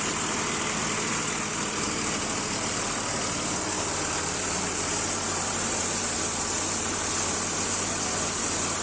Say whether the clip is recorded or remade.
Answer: recorded